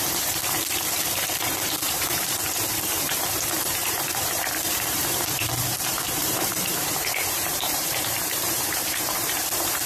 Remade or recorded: remade